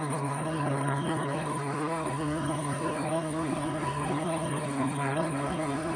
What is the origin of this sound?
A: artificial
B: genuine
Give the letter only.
A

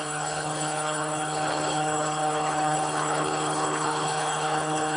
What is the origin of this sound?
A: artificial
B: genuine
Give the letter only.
A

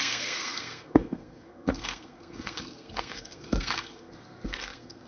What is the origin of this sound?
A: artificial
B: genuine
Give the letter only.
A